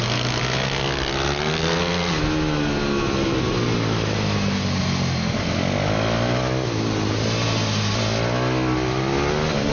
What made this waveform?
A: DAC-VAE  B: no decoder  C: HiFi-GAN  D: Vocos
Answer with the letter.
B